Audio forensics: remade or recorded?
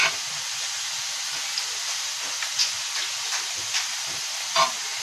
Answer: recorded